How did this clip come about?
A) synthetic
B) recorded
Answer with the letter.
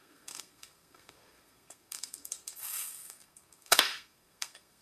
A